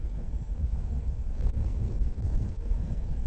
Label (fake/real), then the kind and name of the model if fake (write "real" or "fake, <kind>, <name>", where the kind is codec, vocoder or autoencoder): fake, codec, SNAC